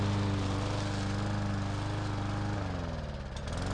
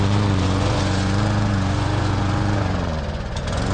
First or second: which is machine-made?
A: second